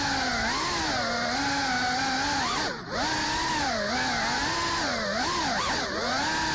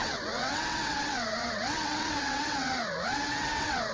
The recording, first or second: first